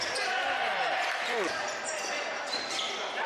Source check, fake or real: fake